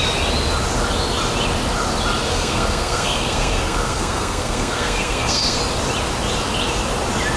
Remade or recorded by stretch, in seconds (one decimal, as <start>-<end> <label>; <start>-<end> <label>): 0.0-2.3 recorded; 2.3-5.6 remade; 5.6-7.4 recorded